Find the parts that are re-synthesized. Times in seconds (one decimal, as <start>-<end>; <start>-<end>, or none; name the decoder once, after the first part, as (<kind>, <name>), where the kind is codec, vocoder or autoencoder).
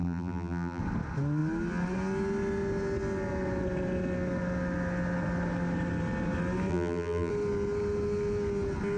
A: 0.0-0.8 (vocoder, BigVGAN v2); 6.7-7.3